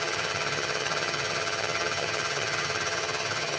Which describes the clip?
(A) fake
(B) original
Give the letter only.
A